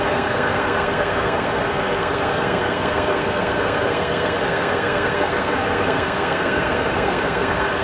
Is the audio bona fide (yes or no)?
no